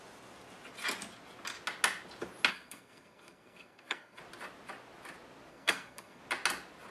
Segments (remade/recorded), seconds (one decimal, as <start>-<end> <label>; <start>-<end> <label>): 0.0-2.5 recorded; 2.5-4.2 remade; 4.2-5.5 recorded; 5.5-6.2 remade; 6.2-6.9 recorded